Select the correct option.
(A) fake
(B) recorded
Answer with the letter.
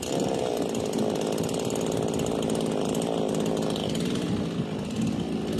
B